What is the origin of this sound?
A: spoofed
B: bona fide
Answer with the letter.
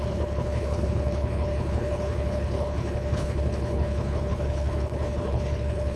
A